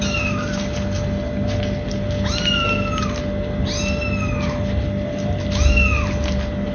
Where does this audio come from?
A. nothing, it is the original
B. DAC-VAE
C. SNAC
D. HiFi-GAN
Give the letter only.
A